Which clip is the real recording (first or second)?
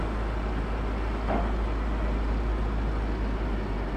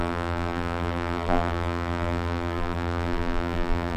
first